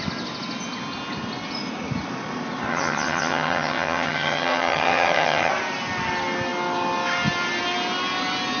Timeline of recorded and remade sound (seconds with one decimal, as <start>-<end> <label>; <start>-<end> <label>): 0.0-2.7 recorded; 2.7-5.5 remade; 5.5-8.6 recorded